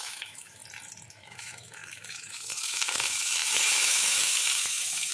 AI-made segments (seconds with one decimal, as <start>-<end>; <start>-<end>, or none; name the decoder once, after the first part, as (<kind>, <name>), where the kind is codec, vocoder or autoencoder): 0.0-0.6 (autoencoder, DAC-VAE); 1.1-5.1